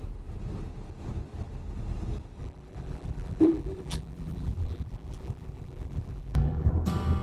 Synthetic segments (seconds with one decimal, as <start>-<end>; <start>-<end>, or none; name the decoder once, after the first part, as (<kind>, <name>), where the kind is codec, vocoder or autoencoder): 2.4-6.7 (vocoder, BigVGAN v2)